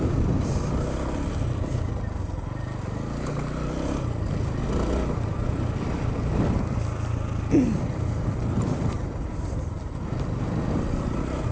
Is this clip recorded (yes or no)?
yes